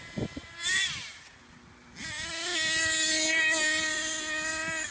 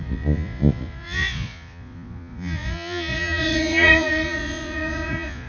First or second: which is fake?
second